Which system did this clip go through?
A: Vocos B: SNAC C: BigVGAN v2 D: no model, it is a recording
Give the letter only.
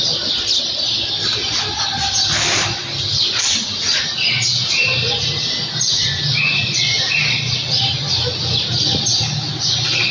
D